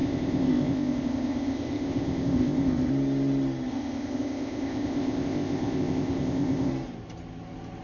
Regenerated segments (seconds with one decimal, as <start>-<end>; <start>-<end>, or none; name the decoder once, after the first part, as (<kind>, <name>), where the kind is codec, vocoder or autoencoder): 0.0-2.9 (codec, ZipCodec); 3.7-6.7